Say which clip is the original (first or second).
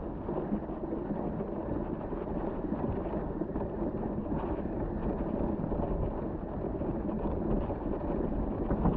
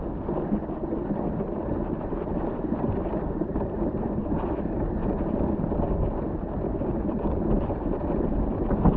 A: first